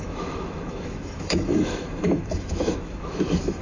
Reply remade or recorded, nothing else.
remade